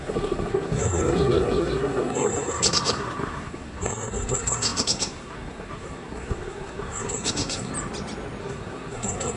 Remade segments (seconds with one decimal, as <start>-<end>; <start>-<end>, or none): 0.0-7.7; 8.4-9.4